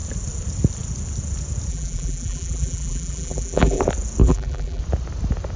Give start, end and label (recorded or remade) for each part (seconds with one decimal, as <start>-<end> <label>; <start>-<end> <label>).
0.0-1.7 recorded; 1.7-3.8 remade; 3.8-4.2 recorded; 4.2-4.8 remade; 4.8-5.6 recorded